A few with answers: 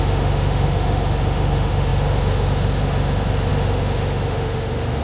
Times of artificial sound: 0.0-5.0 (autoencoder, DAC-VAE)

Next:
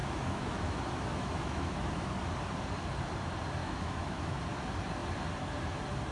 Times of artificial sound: 0.0-2.1 (autoencoder, DAC-VAE); 3.6-4.4

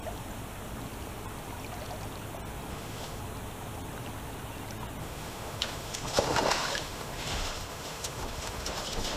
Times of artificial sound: 2.7-3.2 (autoencoder, DAC-VAE); 5.0-9.2

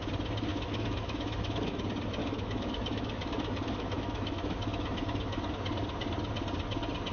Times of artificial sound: 0.5-1.8 (autoencoder, DAC-VAE); 2.2-5.5

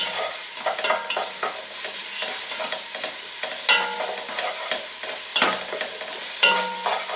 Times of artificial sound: none

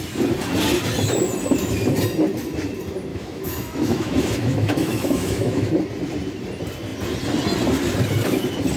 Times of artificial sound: 3.1-5.7 (autoencoder, DAC-VAE)